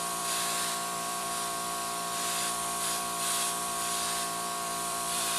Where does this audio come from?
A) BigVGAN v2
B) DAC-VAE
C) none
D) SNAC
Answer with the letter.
A